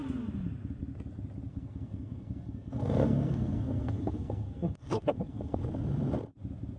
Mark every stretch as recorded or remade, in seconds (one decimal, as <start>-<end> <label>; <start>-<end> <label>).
0.0-1.5 recorded; 1.5-5.6 remade; 5.6-6.8 recorded